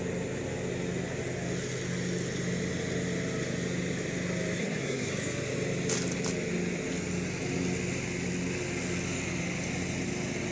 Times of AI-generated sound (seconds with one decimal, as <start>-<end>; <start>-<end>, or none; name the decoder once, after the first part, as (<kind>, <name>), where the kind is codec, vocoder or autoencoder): 4.6-5.1 (codec, SNAC)